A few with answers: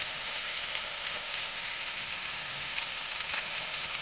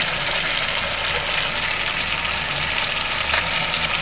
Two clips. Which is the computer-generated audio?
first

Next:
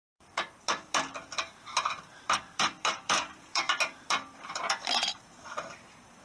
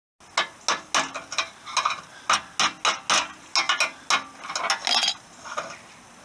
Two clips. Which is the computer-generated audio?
first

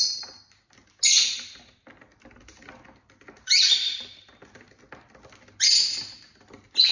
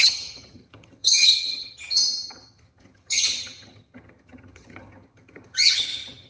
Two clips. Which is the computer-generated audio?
second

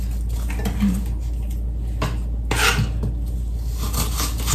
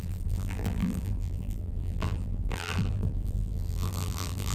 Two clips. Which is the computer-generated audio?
second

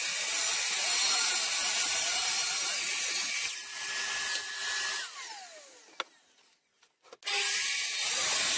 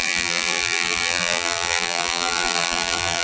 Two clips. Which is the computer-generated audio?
second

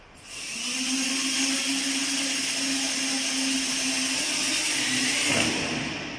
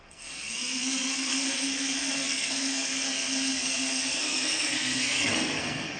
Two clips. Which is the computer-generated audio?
second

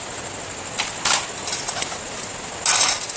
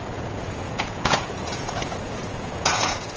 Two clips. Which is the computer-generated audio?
second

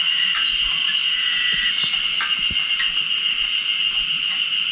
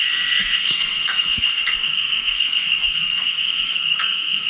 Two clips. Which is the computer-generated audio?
second